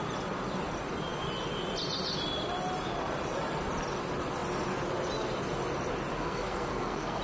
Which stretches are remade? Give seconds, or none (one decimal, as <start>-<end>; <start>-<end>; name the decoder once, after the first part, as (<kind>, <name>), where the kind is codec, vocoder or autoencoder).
6.1-7.2 (codec, SNAC)